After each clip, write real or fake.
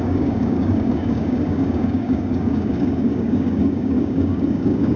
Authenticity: fake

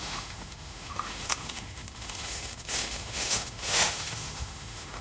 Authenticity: fake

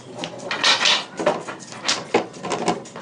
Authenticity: real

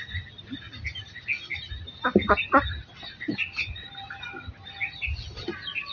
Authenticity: real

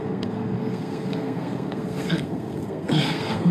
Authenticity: fake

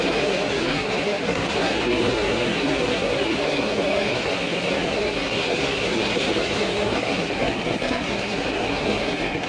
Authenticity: fake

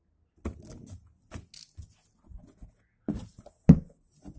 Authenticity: real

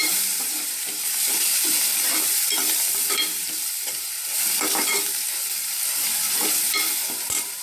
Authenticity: fake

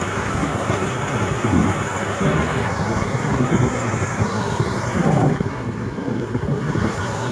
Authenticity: fake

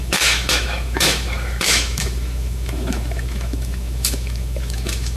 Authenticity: fake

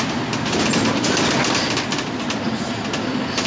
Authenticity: real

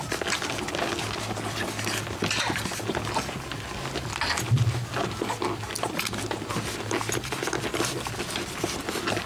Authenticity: real